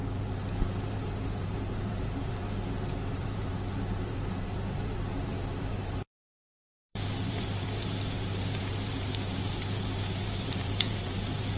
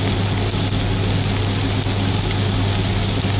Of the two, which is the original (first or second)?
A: second